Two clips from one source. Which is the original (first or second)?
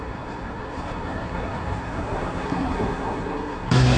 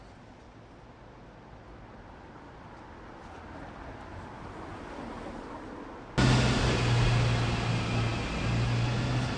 second